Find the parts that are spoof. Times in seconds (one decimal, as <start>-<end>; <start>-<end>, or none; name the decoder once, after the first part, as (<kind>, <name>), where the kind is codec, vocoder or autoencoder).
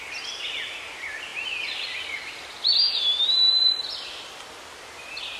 none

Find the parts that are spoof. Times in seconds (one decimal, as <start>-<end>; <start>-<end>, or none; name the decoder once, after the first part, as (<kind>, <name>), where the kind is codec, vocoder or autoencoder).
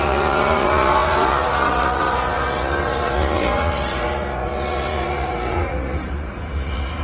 0.0-7.0 (vocoder, Vocos)